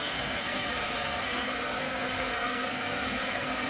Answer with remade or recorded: remade